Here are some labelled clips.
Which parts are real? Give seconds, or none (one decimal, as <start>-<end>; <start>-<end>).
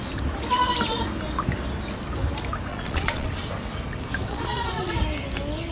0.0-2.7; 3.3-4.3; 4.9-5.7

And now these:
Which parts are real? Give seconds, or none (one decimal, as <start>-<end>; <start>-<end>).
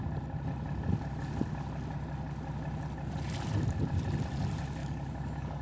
0.0-4.8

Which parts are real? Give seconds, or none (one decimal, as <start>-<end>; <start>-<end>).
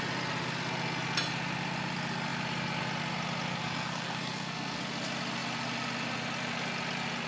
0.0-3.5; 4.8-7.3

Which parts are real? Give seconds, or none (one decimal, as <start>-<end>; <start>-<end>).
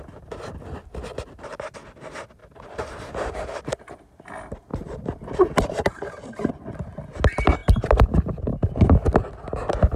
0.0-2.4; 3.6-4.7; 6.5-10.0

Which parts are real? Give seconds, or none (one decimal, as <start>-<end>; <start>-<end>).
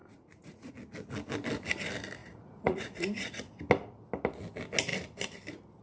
0.7-2.2; 3.5-5.8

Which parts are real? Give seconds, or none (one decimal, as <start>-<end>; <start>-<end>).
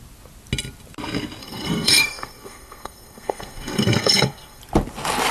0.0-1.4; 4.6-5.3